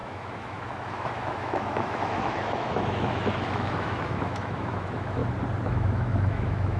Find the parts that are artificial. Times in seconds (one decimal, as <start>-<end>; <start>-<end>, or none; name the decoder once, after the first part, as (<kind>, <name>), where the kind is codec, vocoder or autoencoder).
0.0-5.2 (autoencoder, DAC-VAE); 5.7-6.8